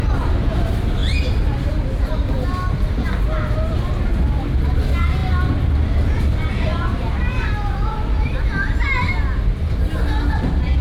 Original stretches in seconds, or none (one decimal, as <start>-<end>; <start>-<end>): 0.0-10.8